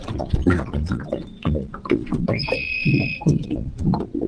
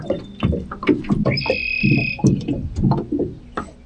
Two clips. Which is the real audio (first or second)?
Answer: second